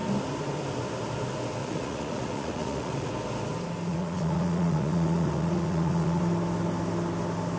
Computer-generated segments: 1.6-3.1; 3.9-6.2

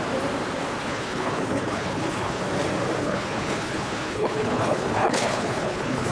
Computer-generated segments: 0.8-2.4; 3.0-6.1

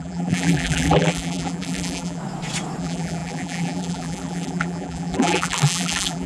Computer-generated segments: 0.0-2.2; 2.8-6.3

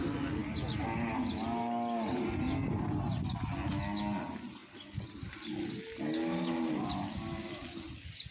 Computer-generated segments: none

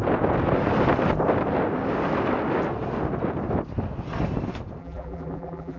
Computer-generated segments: 4.8-5.8

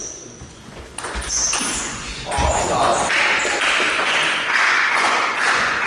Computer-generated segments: 0.0-2.9; 3.9-5.9